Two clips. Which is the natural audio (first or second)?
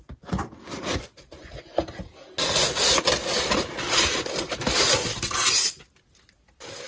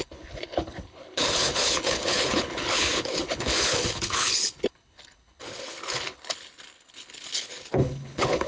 first